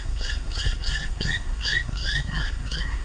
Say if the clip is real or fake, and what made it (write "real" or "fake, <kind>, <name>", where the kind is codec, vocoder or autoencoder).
fake, codec, SNAC